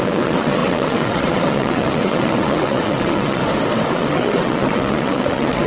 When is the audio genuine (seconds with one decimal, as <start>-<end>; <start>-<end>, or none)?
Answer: 3.4-3.9